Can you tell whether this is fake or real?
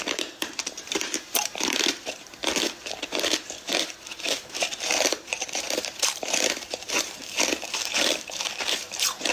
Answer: fake